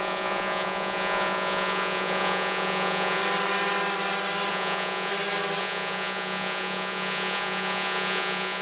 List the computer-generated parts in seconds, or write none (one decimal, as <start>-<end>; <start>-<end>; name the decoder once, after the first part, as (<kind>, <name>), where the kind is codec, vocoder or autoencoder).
0.0-3.2 (vocoder, Vocos); 4.5-5.1; 5.6-8.6